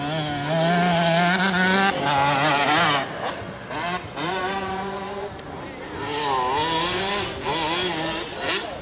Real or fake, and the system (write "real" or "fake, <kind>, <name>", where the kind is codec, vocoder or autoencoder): real